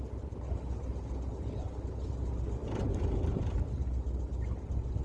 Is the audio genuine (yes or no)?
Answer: yes